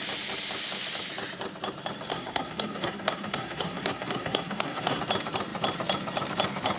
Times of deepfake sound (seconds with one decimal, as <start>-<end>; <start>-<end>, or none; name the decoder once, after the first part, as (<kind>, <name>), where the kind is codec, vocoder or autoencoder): 2.1-5.0 (codec, SNAC)